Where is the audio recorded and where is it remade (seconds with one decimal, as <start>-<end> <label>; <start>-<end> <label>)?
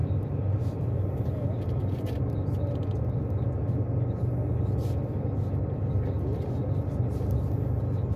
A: 0.0-2.2 remade; 2.2-8.2 recorded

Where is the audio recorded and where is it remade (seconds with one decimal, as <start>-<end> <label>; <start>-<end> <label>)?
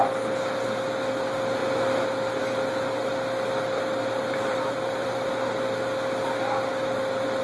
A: 0.0-4.2 recorded; 4.2-5.3 remade; 5.3-7.4 recorded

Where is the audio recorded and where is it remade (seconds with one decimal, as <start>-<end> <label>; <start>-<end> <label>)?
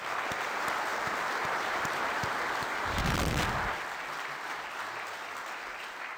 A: 0.0-0.9 recorded; 0.9-3.5 remade; 3.5-6.2 recorded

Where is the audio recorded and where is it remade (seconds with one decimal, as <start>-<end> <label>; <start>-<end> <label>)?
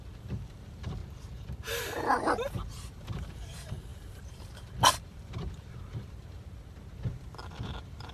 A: 0.0-1.0 remade; 1.0-2.5 recorded; 2.5-8.1 remade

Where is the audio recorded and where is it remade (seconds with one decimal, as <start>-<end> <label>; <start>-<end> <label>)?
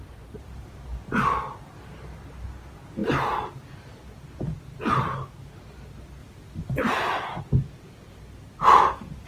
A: 0.0-9.3 recorded